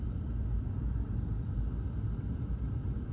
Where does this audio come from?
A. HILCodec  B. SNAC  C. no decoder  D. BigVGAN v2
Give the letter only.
D